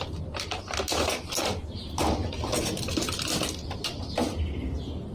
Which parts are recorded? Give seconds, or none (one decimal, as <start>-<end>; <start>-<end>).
0.0-5.1